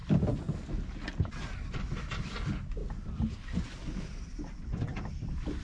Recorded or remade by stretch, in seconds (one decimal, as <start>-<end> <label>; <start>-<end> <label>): 0.0-1.5 recorded; 1.5-2.8 remade; 2.8-4.6 recorded; 4.6-5.6 remade